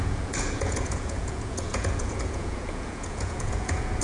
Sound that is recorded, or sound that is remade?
remade